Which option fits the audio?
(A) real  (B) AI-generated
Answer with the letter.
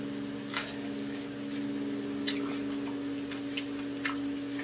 A